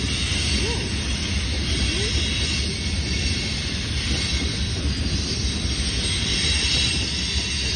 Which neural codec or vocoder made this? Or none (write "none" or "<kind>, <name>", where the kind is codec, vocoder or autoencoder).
none